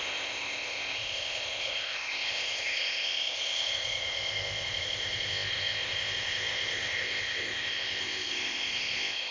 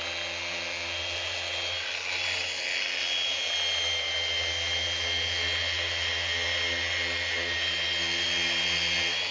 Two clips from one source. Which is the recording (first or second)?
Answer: second